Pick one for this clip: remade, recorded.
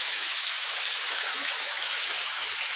remade